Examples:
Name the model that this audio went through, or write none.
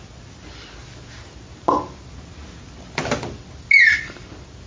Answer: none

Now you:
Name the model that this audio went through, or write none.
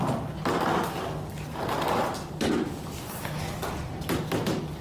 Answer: none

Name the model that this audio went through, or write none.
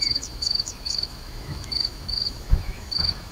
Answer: autoencoder, DAC-VAE